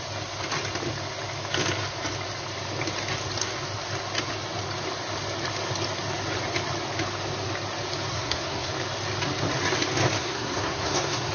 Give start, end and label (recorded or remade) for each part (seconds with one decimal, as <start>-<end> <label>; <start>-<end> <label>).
0.0-8.1 recorded; 8.1-8.7 remade; 8.7-10.2 recorded; 10.2-11.3 remade